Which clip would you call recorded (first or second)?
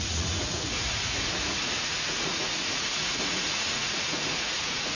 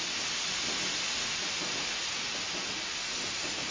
second